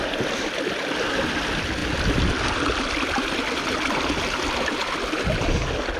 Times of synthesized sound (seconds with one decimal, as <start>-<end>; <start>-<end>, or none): none